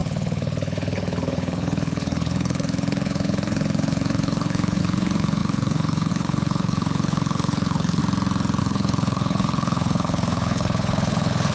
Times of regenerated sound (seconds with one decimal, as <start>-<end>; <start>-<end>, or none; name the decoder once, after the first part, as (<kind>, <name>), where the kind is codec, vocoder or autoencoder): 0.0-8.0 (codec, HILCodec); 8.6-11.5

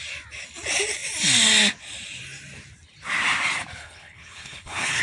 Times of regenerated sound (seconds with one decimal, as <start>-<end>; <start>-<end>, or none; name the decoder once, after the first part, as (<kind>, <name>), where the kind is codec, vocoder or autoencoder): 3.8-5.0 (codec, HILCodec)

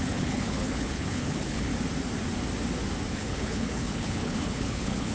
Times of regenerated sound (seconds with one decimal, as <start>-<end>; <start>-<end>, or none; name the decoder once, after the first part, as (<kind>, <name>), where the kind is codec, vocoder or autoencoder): 0.0-1.7 (codec, HILCodec); 3.1-5.1